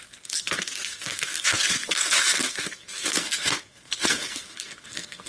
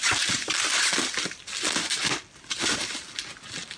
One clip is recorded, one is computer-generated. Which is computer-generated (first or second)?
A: first